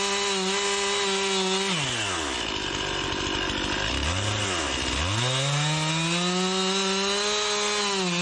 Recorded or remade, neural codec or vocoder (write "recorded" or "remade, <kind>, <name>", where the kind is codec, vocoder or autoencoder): recorded